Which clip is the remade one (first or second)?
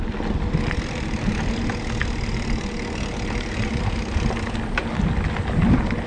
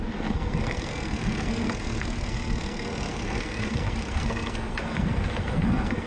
second